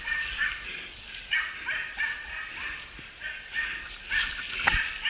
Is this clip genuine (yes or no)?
yes